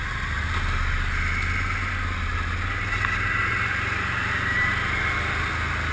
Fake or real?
real